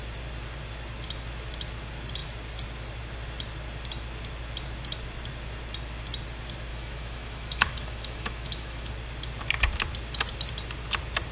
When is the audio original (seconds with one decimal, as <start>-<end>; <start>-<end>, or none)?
0.0-6.7; 8.9-11.3